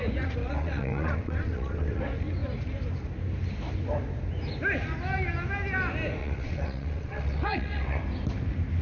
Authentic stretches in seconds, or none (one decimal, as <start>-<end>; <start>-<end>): 0.0-0.4; 2.0-6.2; 8.0-8.8